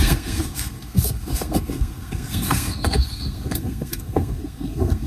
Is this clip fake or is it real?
fake